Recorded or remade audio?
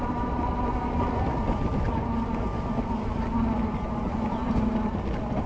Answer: recorded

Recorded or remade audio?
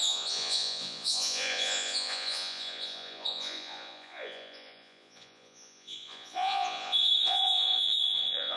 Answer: remade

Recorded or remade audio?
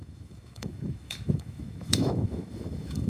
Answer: remade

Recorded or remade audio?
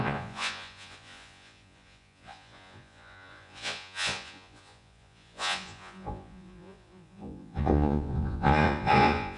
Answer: remade